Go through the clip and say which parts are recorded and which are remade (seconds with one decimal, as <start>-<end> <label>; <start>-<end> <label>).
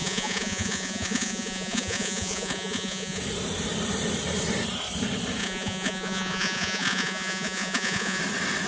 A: 0.0-3.2 remade; 3.2-5.4 recorded; 5.4-8.2 remade; 8.2-8.7 recorded